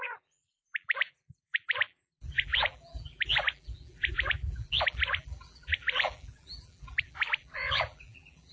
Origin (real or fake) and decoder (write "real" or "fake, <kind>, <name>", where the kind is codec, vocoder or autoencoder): fake, vocoder, BigVGAN v2